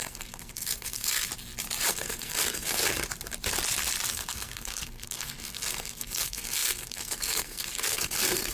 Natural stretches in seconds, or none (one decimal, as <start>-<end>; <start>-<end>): 1.3-1.9; 2.8-4.1